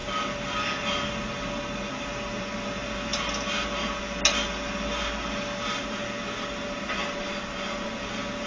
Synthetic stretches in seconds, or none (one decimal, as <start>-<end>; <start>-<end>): none